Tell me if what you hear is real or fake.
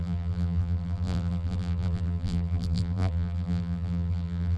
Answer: fake